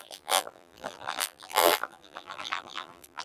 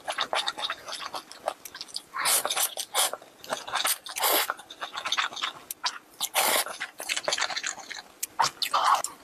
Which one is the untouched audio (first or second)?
second